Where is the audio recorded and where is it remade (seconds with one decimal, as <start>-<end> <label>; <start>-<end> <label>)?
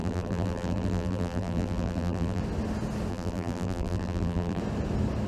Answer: 0.0-2.4 remade; 2.4-3.1 recorded; 3.1-4.6 remade; 4.6-5.3 recorded